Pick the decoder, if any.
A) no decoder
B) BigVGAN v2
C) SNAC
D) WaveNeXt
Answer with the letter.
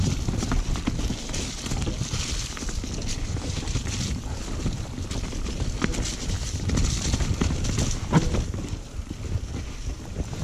A